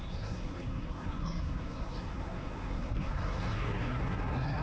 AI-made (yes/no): yes